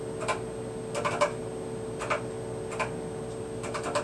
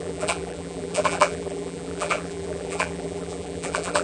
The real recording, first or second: first